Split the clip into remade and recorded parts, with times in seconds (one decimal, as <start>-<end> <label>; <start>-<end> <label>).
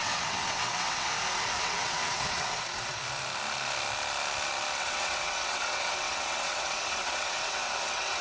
0.0-1.1 remade; 1.1-1.6 recorded; 1.6-3.0 remade; 3.0-4.8 recorded; 4.8-8.2 remade